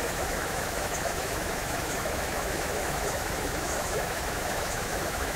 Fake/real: fake